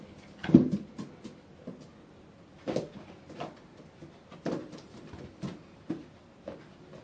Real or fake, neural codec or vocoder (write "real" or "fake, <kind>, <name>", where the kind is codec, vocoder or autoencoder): real